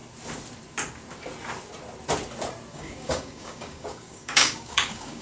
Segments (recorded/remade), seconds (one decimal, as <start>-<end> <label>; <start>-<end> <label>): 0.0-2.7 recorded; 2.7-5.2 remade